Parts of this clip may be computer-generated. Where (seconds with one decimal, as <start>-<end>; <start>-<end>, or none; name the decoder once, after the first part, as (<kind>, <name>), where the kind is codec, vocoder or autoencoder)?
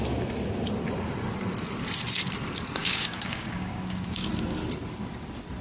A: 2.8-4.3 (codec, DAC)